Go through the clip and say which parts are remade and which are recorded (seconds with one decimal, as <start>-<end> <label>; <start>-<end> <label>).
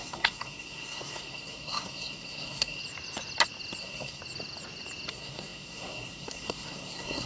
0.0-2.8 remade; 2.8-3.8 recorded; 3.8-4.2 remade; 4.2-5.1 recorded; 5.1-7.3 remade